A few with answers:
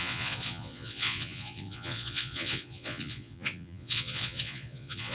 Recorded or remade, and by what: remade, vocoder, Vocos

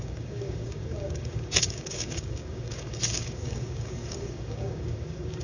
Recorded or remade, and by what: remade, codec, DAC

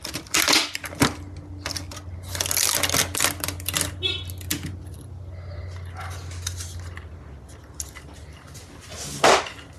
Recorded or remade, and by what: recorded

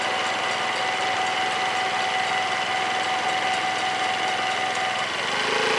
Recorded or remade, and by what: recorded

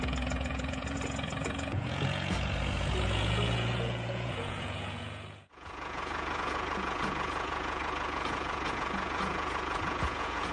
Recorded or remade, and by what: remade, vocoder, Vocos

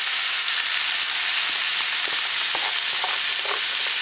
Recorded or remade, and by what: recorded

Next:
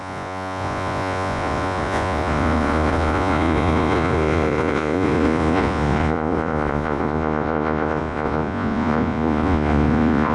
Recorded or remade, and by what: remade, vocoder, Vocos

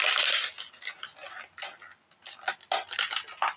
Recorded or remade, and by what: recorded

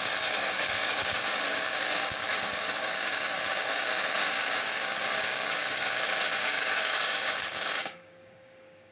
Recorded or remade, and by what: remade, codec, DAC